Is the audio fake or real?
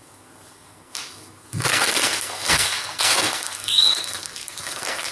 fake